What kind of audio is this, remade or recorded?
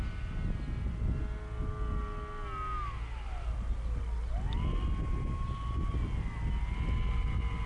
recorded